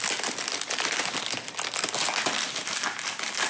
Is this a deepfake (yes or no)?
no